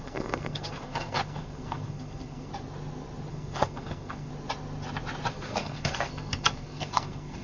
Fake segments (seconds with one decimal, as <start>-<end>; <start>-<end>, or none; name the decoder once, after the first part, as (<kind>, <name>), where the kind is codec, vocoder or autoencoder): 0.0-2.5 (codec, SNAC); 3.3-4.3; 5.3-7.4